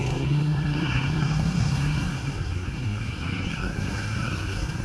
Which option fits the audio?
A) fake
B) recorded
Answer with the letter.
A